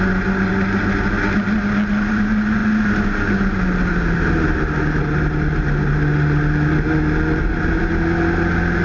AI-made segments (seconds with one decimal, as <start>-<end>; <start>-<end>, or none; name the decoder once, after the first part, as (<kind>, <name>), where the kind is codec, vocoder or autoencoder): none

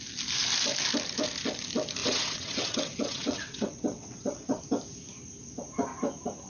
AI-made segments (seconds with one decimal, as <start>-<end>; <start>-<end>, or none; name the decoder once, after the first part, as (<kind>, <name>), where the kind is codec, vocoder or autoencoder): 2.0-4.6 (vocoder, WaveNeXt)

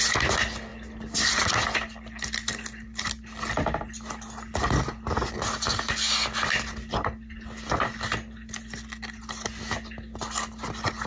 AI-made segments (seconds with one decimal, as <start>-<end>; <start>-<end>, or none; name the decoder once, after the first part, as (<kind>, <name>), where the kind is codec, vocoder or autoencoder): none

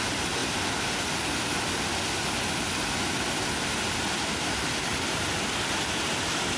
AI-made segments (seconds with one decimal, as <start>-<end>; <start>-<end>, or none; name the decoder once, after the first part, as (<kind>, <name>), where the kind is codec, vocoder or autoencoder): none

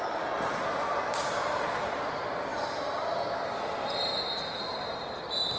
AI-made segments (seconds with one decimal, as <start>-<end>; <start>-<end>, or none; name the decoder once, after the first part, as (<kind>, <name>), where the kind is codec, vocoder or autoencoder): none

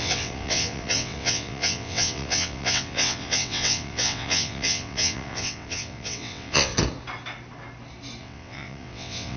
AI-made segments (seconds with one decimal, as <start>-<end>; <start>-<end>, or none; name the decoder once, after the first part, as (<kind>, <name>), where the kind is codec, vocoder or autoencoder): 0.0-6.7 (vocoder, WaveNeXt); 8.2-9.4

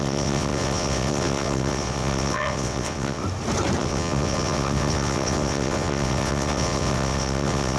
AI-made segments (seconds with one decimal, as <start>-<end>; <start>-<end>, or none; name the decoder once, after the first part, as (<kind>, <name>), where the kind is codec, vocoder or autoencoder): 0.0-3.2 (vocoder, WaveNeXt); 3.8-7.8

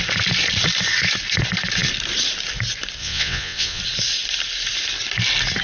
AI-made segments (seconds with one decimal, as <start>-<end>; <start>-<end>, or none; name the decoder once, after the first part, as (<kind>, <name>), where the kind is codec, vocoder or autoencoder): 3.0-3.8 (vocoder, WaveNeXt)